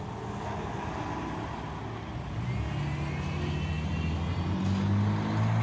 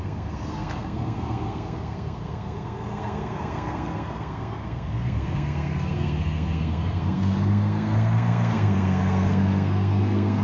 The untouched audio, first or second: first